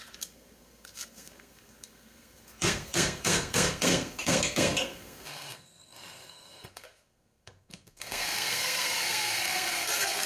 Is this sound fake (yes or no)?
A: yes